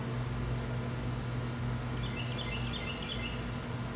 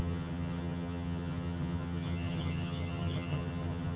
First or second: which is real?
first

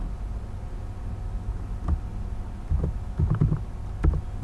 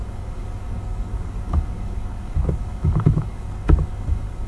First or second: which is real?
first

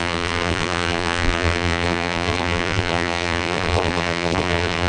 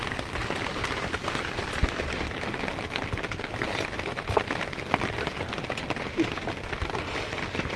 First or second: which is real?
second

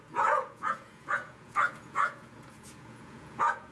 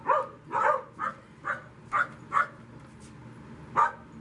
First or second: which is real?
second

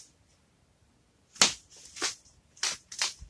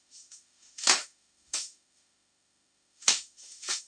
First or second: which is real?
first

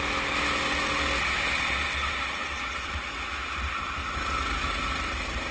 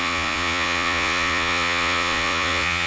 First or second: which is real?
first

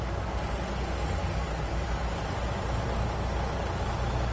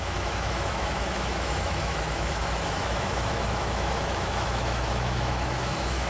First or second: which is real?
first